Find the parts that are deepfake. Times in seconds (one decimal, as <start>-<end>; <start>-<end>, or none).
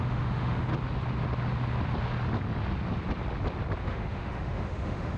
0.0-0.7; 3.8-5.2